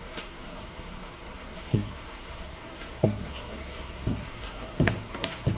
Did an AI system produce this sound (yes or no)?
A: yes